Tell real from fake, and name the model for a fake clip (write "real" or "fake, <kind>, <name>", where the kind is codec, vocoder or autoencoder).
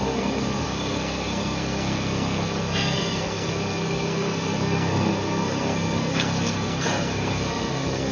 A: fake, codec, SNAC